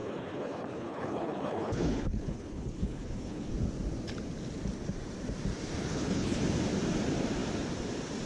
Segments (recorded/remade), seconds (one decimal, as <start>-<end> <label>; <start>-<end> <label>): 0.0-3.5 remade; 3.5-5.8 recorded; 5.8-6.4 remade; 6.4-8.3 recorded